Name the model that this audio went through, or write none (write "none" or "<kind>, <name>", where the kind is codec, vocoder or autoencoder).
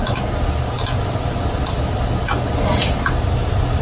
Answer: none